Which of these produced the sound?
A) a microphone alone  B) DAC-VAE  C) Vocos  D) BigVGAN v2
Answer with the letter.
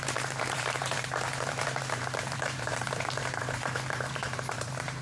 D